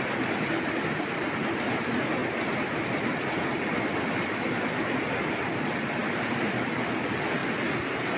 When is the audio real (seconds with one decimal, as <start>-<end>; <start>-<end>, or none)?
0.0-6.0; 6.7-8.2